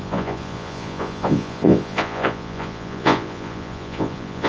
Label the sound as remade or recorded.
remade